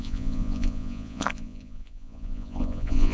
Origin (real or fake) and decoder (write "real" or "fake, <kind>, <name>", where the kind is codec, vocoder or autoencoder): fake, vocoder, Vocos